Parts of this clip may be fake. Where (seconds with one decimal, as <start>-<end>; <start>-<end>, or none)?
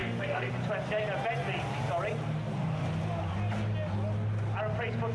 0.0-0.5